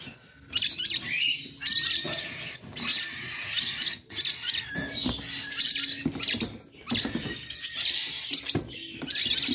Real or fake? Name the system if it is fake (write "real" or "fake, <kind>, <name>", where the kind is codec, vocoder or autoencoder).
real